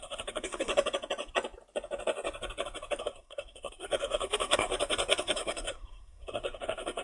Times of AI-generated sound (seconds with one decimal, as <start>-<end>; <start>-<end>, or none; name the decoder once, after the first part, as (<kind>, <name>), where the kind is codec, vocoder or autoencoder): 0.0-0.7 (codec, SNAC); 3.0-4.7; 5.2-7.0